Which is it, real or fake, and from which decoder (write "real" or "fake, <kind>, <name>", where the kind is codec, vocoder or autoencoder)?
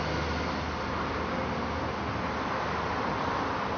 real